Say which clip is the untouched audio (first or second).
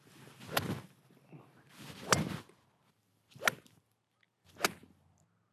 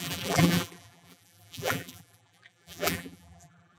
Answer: first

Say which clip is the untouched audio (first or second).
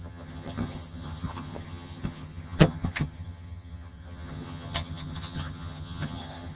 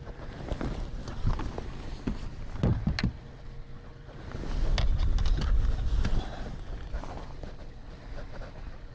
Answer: second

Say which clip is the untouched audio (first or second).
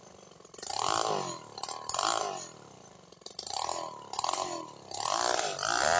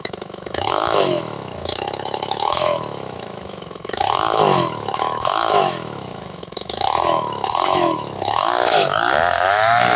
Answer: first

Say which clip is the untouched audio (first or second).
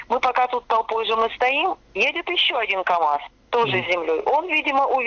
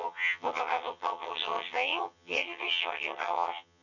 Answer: first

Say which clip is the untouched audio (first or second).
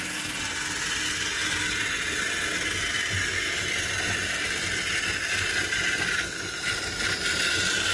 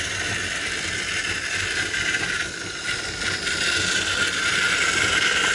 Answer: first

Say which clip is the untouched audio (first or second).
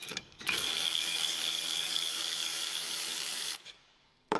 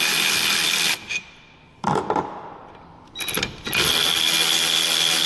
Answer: second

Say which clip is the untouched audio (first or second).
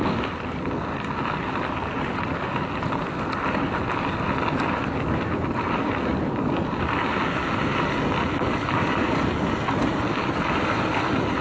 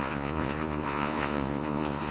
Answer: first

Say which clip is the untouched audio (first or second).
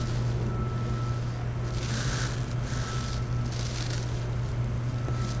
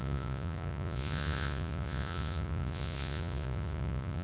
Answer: first